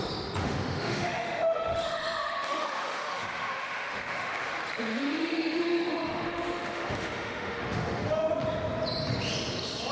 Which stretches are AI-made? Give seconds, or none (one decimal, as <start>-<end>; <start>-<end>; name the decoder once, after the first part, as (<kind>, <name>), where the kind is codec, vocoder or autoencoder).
0.4-4.3 (autoencoder, DAC-VAE); 4.9-8.3